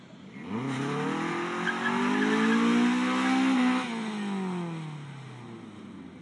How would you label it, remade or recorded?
recorded